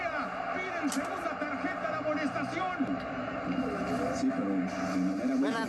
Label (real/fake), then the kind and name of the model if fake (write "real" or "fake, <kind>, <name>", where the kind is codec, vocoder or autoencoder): real